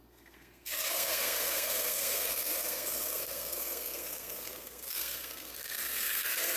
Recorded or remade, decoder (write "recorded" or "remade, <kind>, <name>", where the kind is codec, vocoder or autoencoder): remade, codec, SNAC